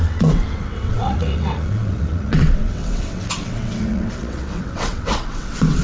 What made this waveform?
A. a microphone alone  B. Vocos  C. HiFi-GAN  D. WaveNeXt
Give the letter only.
D